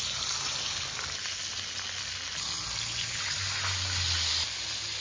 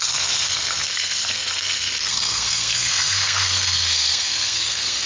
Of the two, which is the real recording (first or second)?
first